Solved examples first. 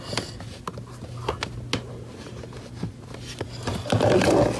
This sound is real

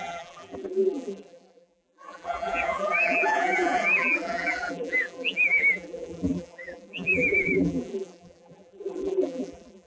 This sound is fake